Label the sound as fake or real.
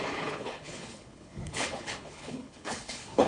fake